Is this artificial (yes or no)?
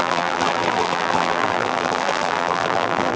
yes